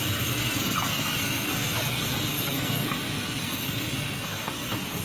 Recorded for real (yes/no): no